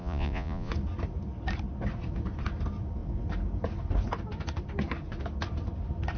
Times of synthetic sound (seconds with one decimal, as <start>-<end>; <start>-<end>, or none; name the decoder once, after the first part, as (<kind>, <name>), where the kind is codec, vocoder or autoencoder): 0.0-0.7 (vocoder, Vocos)